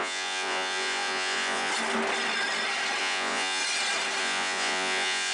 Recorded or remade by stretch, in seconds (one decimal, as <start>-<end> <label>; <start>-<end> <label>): 0.0-1.7 remade; 1.7-3.0 recorded; 3.0-3.6 remade; 3.6-4.2 recorded; 4.2-5.3 remade